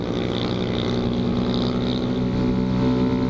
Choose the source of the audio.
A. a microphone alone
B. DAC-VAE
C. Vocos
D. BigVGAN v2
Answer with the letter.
A